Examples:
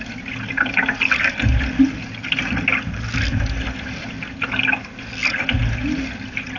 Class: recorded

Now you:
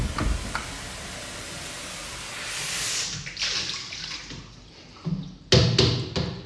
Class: recorded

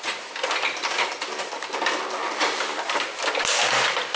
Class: recorded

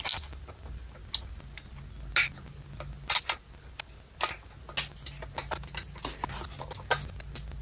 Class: recorded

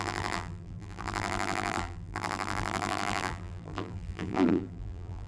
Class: remade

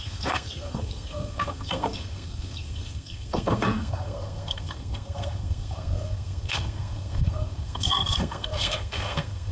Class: remade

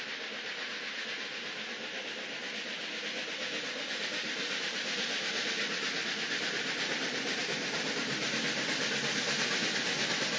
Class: recorded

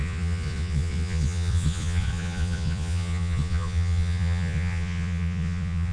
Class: remade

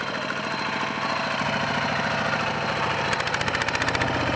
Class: recorded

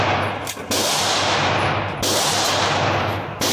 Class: recorded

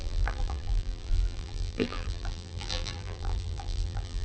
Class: remade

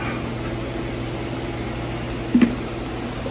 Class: recorded